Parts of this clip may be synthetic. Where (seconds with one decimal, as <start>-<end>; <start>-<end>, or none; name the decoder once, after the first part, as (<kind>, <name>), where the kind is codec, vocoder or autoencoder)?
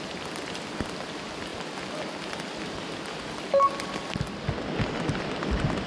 none